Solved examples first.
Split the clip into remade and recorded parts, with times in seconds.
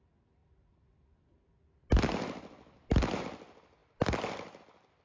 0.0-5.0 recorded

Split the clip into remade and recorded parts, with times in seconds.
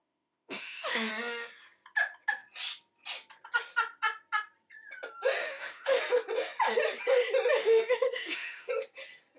0.0-1.1 remade; 1.1-5.4 recorded; 5.4-6.0 remade; 6.0-7.6 recorded; 7.6-8.7 remade; 8.7-9.4 recorded